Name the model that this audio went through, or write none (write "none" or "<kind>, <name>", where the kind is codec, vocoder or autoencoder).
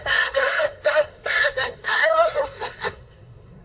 codec, SNAC